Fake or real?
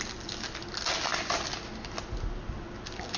real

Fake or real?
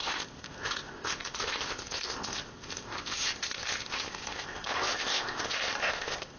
fake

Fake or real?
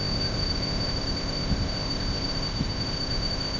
fake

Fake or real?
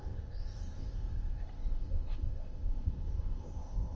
fake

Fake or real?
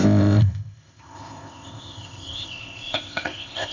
fake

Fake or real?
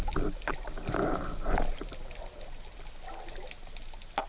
real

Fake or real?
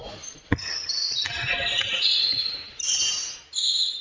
real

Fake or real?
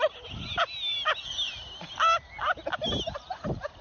real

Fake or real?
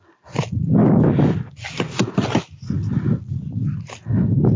real